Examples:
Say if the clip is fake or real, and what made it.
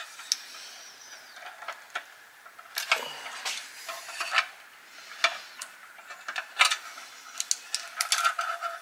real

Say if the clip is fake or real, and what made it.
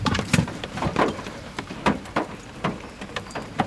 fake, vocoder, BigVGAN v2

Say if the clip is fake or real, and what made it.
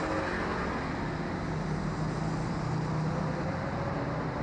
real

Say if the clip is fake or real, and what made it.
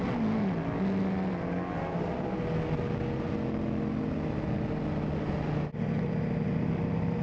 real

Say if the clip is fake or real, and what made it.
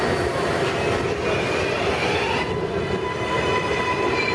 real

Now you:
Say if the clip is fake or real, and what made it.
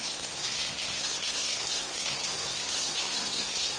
fake, codec, SNAC